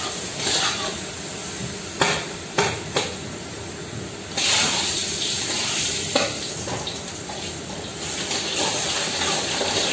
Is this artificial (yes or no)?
no